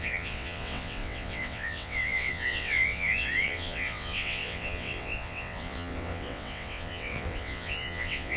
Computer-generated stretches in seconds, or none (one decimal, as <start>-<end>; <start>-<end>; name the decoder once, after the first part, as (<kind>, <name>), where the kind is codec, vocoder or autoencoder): 0.0-8.4 (vocoder, WaveNeXt)